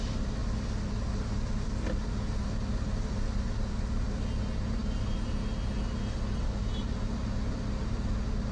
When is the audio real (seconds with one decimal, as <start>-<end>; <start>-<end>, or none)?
0.0-8.5